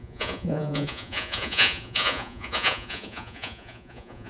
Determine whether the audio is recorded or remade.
remade